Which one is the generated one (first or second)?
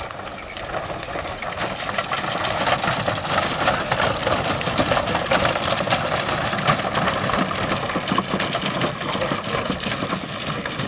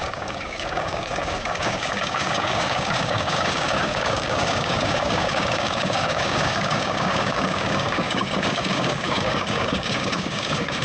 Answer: second